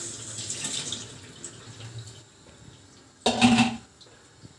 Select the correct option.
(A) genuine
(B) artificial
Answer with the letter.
A